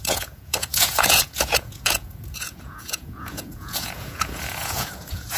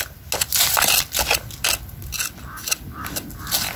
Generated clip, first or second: first